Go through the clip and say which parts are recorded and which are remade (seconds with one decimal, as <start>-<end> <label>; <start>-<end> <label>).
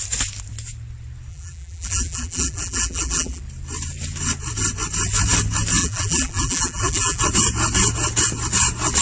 0.0-1.3 recorded; 1.3-3.4 remade; 3.4-5.8 recorded; 5.8-7.2 remade; 7.2-9.0 recorded